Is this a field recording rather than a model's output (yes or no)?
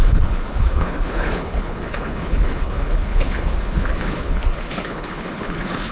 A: no